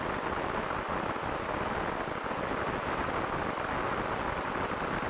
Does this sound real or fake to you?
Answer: real